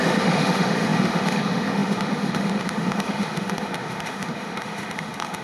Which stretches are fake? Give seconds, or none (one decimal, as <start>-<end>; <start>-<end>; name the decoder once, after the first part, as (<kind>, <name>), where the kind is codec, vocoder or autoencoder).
0.0-5.4 (autoencoder, DAC-VAE)